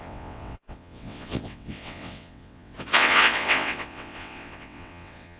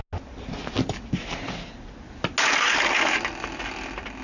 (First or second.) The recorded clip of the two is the second